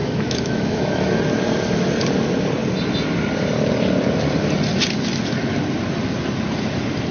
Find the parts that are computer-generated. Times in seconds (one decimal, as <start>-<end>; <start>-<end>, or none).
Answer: 0.0-1.2